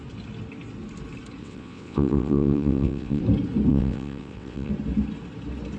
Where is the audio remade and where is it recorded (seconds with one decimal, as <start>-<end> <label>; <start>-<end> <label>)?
0.0-1.4 recorded; 1.4-3.2 remade; 3.2-3.7 recorded; 3.7-4.7 remade; 4.7-5.8 recorded